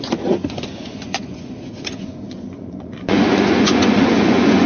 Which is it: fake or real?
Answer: fake